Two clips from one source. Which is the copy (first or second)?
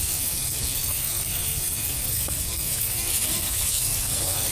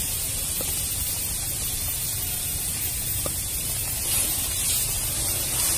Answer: first